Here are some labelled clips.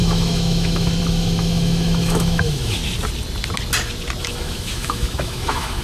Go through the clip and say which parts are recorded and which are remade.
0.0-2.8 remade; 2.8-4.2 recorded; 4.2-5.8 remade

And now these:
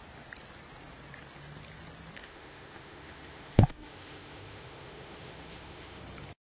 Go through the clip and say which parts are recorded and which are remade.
0.0-2.2 recorded; 2.2-6.0 remade; 6.0-6.4 recorded

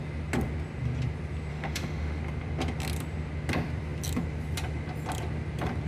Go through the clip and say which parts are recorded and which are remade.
0.0-1.5 recorded; 1.5-2.2 remade; 2.2-5.9 recorded

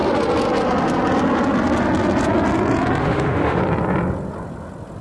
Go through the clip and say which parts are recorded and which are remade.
0.0-3.0 recorded; 3.0-3.6 remade; 3.6-5.0 recorded

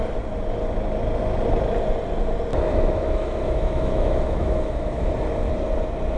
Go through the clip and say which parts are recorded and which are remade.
0.0-2.5 recorded; 2.5-5.0 remade; 5.0-6.2 recorded

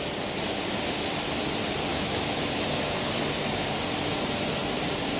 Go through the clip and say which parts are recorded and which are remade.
0.0-1.9 recorded; 1.9-3.1 remade; 3.1-5.2 recorded